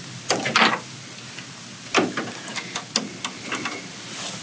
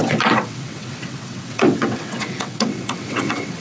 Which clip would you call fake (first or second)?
second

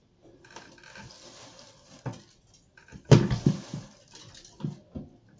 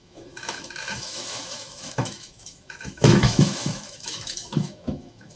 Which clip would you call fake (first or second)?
second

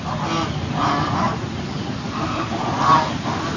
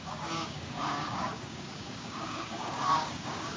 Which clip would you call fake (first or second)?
second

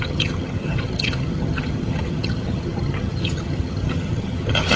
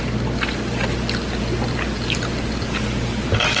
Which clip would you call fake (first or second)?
first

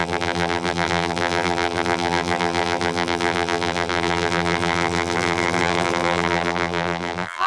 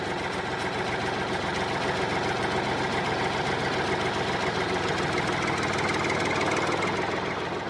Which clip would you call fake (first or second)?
first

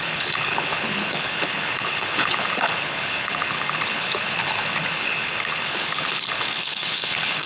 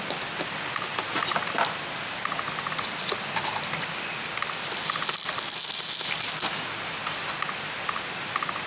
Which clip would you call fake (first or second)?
first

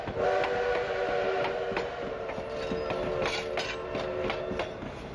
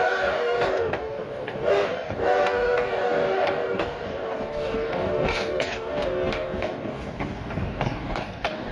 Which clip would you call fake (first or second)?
second